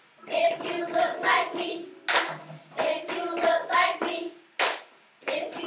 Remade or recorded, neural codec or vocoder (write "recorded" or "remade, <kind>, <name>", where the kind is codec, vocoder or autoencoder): recorded